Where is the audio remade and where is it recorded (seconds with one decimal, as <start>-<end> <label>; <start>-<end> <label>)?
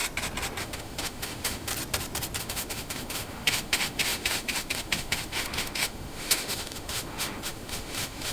0.0-0.6 recorded; 0.6-1.7 remade; 1.7-2.4 recorded; 2.4-8.3 remade